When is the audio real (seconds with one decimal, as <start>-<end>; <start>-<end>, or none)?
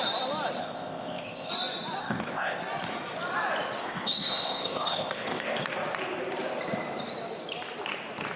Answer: 0.0-0.6; 1.5-2.0; 2.6-3.8; 5.6-8.4